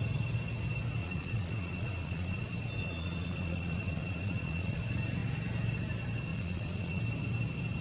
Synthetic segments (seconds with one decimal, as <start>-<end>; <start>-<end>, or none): 1.0-2.4; 2.8-4.8; 6.3-7.0